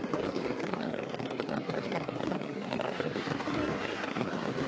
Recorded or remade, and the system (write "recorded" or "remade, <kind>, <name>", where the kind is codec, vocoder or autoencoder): remade, codec, SNAC